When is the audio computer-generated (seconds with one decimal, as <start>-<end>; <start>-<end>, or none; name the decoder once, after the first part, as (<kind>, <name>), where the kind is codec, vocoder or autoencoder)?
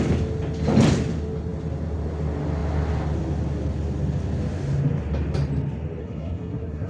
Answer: 6.0-6.9 (codec, SNAC)